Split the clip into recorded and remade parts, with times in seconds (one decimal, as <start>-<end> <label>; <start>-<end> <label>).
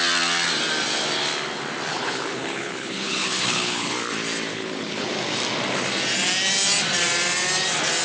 0.0-1.9 recorded; 1.9-3.9 remade; 3.9-4.5 recorded; 4.5-5.1 remade; 5.1-8.0 recorded